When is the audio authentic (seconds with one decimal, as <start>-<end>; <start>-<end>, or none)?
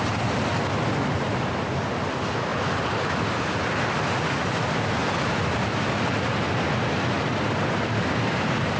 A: 0.0-8.8